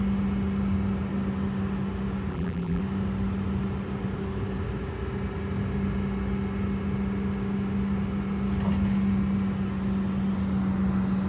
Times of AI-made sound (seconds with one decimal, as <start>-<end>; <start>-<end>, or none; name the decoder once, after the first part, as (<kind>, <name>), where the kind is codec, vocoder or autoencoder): 2.3-2.8 (vocoder, BigVGAN v2)